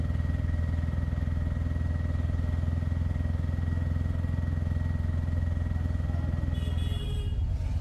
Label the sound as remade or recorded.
recorded